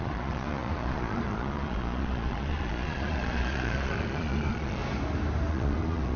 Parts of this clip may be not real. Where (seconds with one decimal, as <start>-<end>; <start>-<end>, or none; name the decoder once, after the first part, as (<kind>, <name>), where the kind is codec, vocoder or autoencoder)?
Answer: 0.0-4.8 (vocoder, Vocos); 5.5-6.2